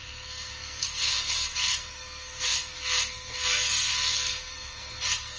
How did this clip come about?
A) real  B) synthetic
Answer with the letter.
B